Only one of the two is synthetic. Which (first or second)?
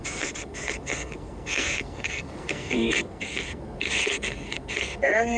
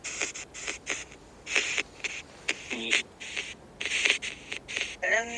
first